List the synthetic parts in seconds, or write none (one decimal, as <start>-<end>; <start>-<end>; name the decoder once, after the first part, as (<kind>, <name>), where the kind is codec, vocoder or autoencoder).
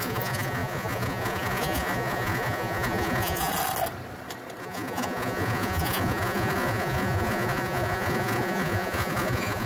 0.0-3.5 (vocoder, Vocos); 4.6-9.7